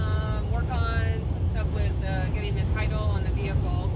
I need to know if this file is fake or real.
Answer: real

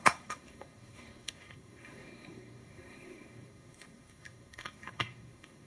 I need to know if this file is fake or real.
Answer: fake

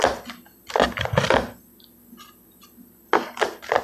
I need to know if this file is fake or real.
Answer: real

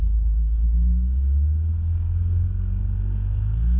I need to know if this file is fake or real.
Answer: fake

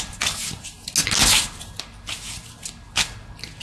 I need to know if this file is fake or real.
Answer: real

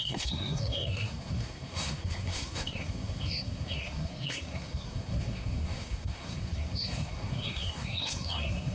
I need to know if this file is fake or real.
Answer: fake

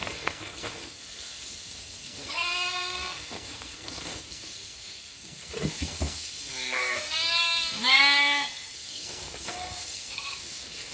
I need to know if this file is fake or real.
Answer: fake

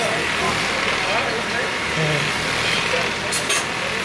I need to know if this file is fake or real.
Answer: real